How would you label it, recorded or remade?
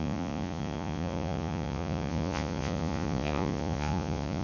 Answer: remade